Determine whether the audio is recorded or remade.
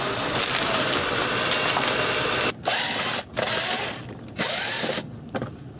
remade